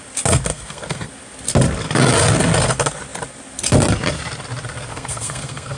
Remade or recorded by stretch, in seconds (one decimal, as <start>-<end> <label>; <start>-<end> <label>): 0.0-0.5 recorded; 0.5-1.1 remade; 1.1-4.9 recorded; 4.9-5.8 remade

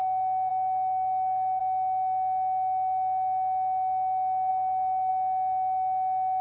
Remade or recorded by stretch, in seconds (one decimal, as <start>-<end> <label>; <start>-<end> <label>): 0.0-0.5 recorded; 0.5-1.6 remade; 1.6-4.5 recorded; 4.5-5.1 remade; 5.1-6.4 recorded

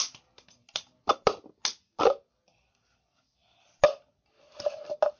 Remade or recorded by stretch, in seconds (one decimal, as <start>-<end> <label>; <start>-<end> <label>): 0.0-5.2 recorded

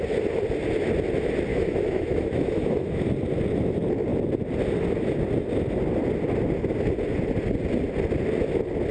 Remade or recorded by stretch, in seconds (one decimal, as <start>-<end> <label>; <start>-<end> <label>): 0.0-1.5 recorded; 1.5-3.0 remade; 3.0-8.9 recorded

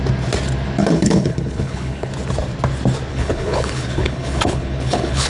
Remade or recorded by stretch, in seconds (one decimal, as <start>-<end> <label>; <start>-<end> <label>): 0.0-0.8 recorded; 0.8-2.1 remade; 2.1-3.1 recorded; 3.1-5.3 remade

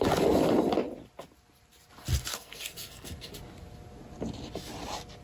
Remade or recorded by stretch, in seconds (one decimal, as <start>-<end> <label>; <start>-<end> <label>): 0.0-2.3 recorded; 2.3-3.3 remade; 3.3-5.2 recorded

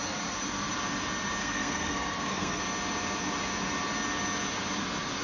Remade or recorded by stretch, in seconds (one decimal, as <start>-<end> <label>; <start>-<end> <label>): 0.0-1.4 recorded; 1.4-2.6 remade; 2.6-5.2 recorded

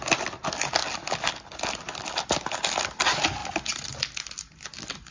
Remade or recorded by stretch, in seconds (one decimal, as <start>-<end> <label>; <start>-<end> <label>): 0.0-5.1 recorded